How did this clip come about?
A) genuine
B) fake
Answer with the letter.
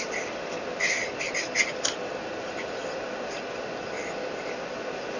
A